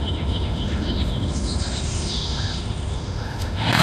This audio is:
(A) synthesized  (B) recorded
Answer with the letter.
A